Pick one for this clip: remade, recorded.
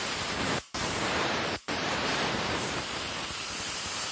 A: remade